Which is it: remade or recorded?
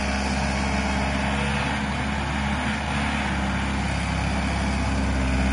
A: recorded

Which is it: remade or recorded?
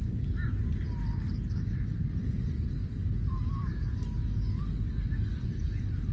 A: recorded